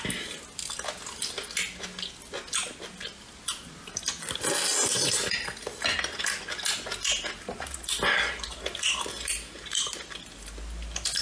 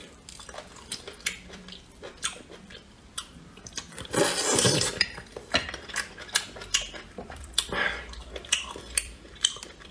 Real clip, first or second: first